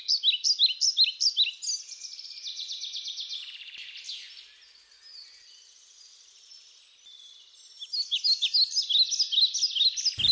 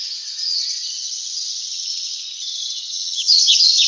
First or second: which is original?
first